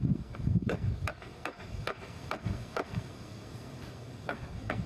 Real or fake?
fake